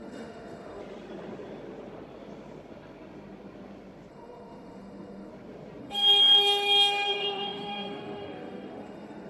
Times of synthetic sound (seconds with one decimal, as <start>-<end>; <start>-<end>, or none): 0.0-0.8; 4.1-5.3; 5.8-9.3